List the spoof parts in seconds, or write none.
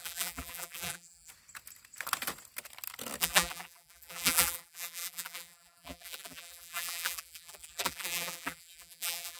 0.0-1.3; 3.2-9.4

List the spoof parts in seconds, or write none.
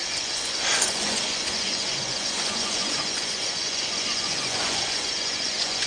0.0-5.9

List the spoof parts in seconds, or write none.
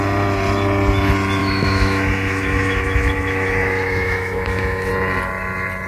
1.4-4.9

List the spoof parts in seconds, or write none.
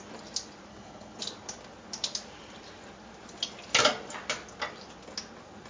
0.7-1.2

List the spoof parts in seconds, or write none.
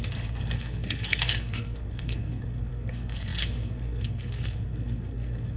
0.0-5.6